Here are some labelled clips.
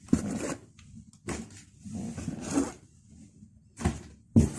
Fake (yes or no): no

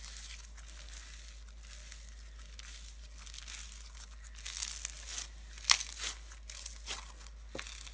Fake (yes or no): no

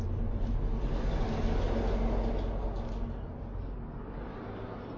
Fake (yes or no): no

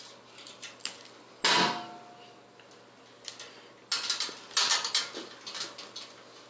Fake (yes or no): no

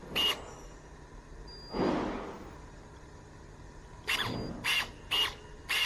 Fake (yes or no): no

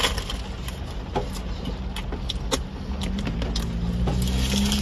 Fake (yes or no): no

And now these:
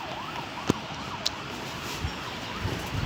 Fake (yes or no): no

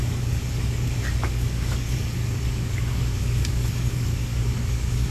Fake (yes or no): yes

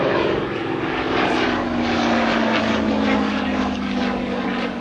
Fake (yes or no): yes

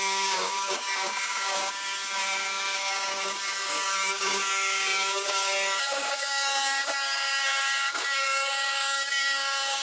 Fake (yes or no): yes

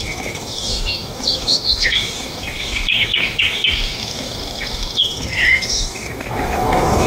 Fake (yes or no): yes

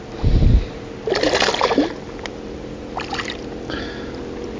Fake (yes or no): no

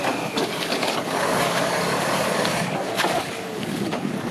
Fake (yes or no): yes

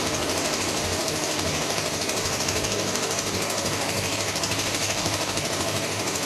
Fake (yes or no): yes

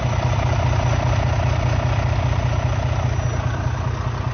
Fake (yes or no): no